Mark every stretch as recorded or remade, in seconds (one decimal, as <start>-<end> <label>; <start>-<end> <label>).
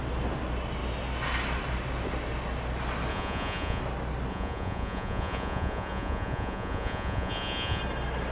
0.0-3.1 recorded; 3.1-3.8 remade; 3.8-4.3 recorded; 4.3-7.8 remade; 7.8-8.3 recorded